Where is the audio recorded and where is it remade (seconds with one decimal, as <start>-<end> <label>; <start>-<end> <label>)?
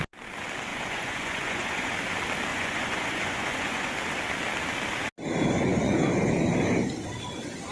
0.0-0.7 recorded; 0.7-1.9 remade; 1.9-2.5 recorded; 2.5-3.9 remade; 3.9-5.7 recorded; 5.7-6.5 remade; 6.5-7.7 recorded